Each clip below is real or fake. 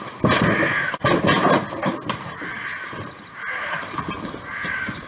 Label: real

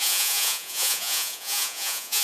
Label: fake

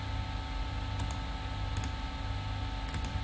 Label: real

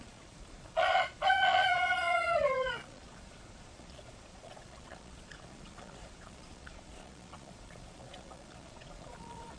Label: fake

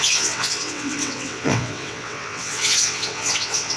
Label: fake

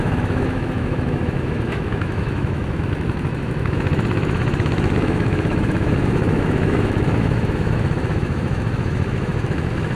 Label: fake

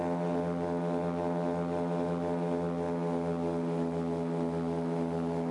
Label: real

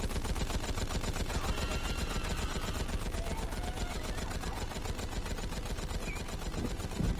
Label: real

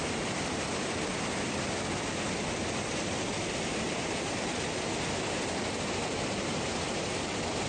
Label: real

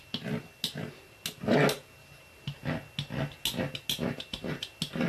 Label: real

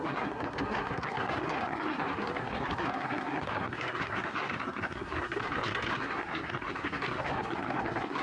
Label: fake